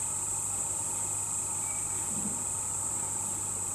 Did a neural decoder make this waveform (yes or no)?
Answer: no